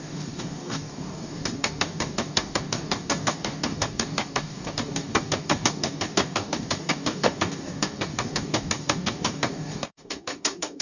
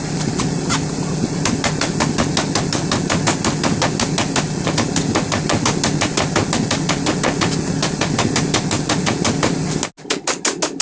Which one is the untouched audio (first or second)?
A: second